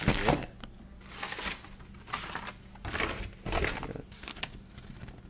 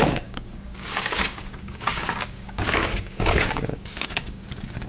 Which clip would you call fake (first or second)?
second